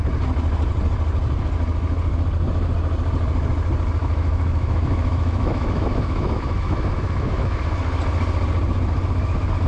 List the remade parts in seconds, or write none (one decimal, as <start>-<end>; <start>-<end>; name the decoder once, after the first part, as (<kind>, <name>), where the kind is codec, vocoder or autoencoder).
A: 4.0-7.6 (autoencoder, DAC-VAE)